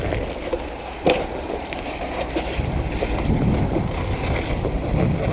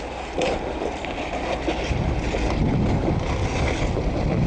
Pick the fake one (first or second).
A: first